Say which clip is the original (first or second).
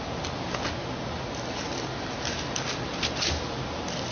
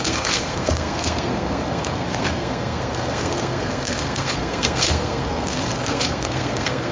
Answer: first